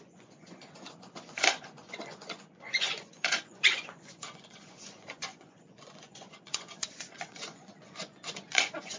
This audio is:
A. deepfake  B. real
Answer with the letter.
A